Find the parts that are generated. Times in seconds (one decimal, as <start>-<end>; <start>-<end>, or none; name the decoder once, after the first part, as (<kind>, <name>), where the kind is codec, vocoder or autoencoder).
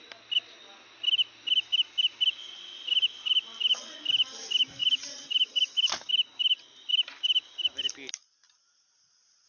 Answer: none